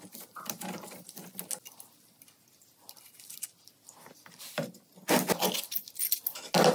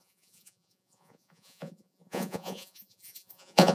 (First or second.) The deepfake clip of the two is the second